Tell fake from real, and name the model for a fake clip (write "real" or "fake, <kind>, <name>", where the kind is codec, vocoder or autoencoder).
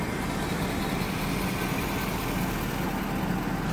real